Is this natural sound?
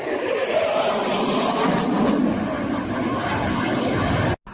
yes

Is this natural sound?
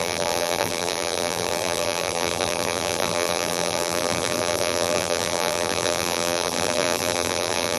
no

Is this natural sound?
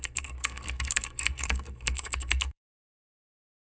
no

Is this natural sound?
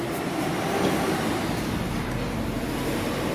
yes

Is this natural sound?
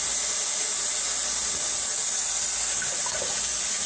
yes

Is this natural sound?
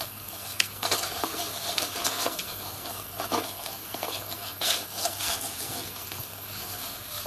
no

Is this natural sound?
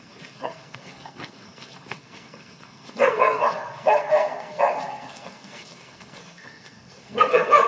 no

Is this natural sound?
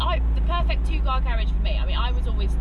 yes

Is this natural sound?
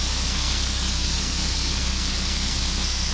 no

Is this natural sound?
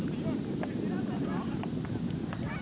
yes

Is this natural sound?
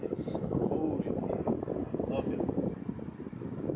yes